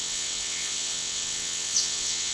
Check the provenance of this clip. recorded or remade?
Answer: remade